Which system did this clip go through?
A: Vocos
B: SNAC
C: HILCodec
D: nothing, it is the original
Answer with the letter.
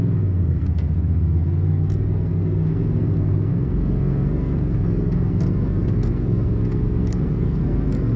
B